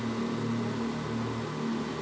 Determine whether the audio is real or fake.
real